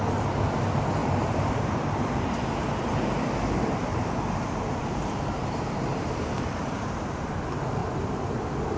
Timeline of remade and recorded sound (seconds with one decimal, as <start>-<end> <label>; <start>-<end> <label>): 0.0-1.0 recorded; 1.0-3.3 remade; 3.3-3.9 recorded; 3.9-7.0 remade; 7.0-7.8 recorded; 7.8-8.4 remade; 8.4-8.8 recorded